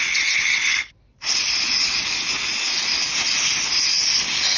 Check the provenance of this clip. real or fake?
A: real